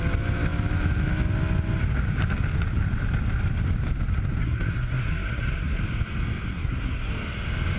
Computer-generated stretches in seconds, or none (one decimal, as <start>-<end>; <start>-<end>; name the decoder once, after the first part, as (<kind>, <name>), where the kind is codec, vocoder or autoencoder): 4.4-5.8 (codec, SNAC); 6.5-7.1